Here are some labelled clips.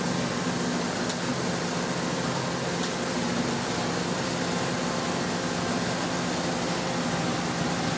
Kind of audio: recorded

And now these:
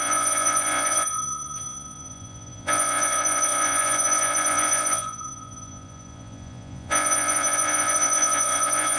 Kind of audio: remade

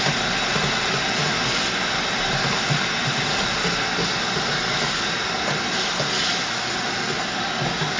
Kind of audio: recorded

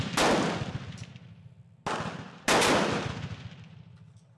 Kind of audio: recorded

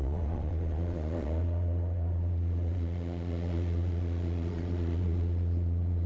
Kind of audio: remade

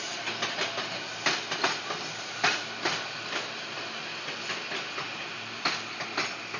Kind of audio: recorded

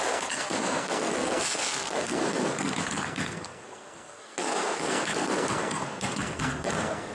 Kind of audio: remade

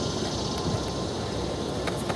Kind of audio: recorded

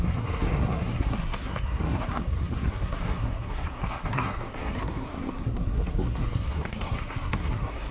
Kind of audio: remade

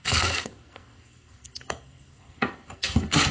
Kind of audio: remade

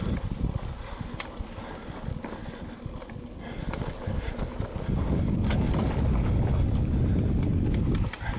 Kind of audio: recorded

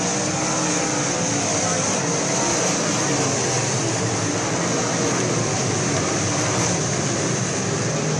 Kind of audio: recorded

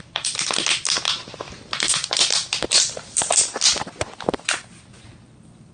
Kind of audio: recorded